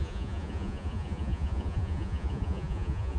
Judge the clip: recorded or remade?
remade